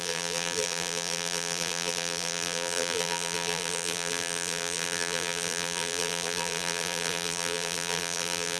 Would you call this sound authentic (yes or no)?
no